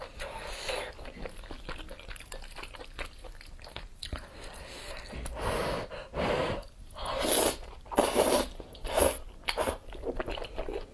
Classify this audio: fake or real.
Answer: real